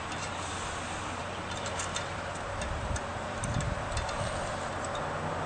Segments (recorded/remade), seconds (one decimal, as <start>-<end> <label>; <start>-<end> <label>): 0.0-1.2 recorded; 1.2-4.5 remade; 4.5-5.5 recorded